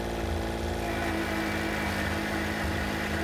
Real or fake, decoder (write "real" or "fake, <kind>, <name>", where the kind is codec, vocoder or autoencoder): real